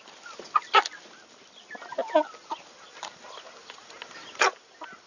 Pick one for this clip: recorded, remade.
recorded